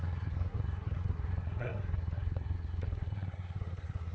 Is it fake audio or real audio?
fake